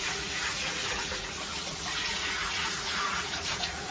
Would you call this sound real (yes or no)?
no